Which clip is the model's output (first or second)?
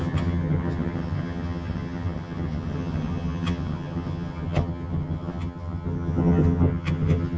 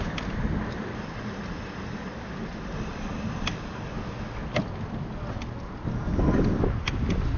first